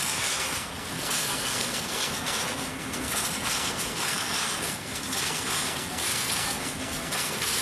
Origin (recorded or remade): remade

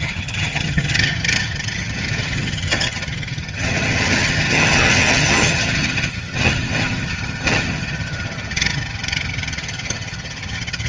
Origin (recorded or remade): remade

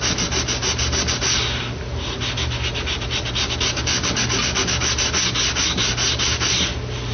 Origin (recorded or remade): recorded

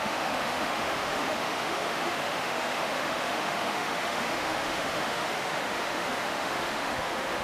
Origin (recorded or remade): remade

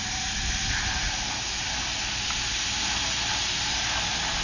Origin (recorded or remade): recorded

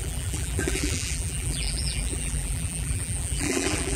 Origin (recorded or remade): remade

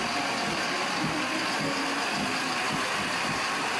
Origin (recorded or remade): remade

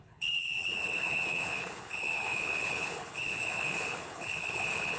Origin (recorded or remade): remade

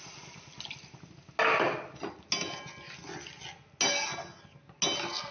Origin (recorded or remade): recorded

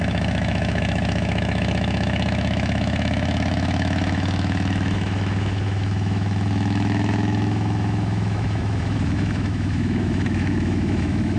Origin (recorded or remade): remade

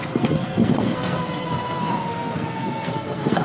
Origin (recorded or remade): remade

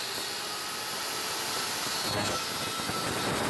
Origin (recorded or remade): recorded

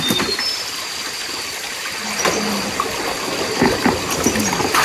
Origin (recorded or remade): recorded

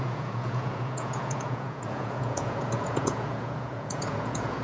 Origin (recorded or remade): remade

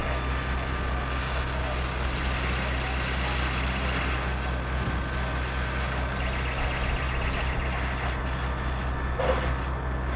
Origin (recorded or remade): recorded